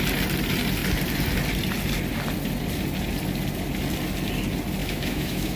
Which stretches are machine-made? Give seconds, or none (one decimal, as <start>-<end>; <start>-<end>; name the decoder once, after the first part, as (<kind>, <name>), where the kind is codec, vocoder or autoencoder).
4.8-5.6 (autoencoder, DAC-VAE)